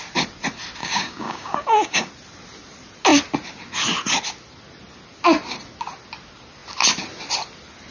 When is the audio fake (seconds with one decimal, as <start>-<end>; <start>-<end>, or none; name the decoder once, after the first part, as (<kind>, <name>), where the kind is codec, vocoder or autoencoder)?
0.8-2.1 (codec, DAC)